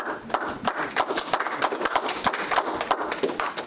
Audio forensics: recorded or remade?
recorded